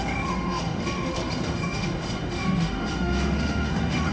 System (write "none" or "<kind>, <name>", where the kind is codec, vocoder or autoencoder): autoencoder, DAC-VAE